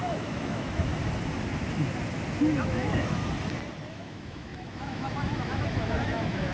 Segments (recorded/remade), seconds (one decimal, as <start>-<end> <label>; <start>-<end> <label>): 0.0-0.9 remade; 0.9-2.6 recorded; 2.6-3.2 remade; 3.2-3.9 recorded; 3.9-6.5 remade